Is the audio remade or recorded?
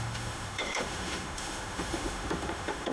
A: remade